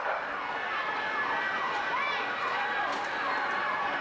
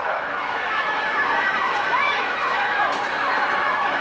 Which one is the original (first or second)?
first